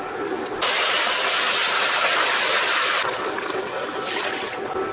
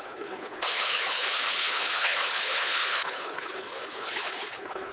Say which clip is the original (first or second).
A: first